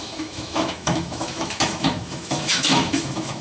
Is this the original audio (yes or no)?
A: no